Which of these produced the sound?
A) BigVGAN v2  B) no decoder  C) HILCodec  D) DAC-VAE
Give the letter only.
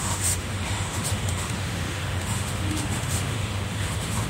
D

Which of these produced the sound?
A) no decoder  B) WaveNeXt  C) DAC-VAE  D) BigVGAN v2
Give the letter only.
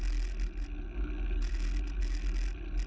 A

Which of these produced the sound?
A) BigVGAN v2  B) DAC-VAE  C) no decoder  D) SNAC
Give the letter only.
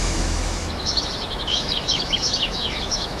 B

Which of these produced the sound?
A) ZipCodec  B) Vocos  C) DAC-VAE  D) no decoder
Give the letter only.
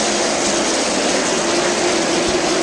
D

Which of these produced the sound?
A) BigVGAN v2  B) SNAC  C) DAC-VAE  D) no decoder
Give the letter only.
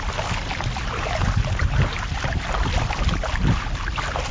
D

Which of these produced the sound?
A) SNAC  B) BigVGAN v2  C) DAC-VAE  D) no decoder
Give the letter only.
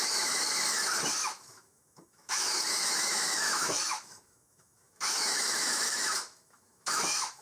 C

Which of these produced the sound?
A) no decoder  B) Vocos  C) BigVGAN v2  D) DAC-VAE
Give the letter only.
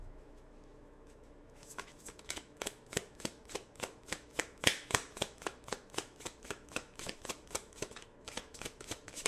D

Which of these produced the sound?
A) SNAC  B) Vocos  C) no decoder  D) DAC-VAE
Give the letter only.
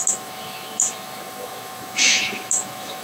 D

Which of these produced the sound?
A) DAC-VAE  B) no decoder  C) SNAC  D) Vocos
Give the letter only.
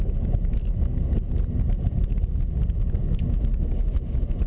B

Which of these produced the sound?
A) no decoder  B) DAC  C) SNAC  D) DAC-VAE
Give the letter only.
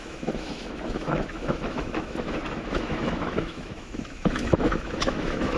D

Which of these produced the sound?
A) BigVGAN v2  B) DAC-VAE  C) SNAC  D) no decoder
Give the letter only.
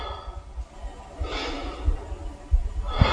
D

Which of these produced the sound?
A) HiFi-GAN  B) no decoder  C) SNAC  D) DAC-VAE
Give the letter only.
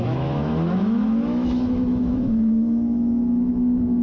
D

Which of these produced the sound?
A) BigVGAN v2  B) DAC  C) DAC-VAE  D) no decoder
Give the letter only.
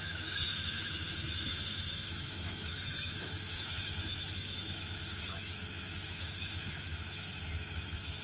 C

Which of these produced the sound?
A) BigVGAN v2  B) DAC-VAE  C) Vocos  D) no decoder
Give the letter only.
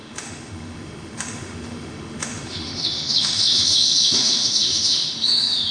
B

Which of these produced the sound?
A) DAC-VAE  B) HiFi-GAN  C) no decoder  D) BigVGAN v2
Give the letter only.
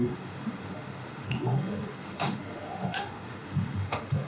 A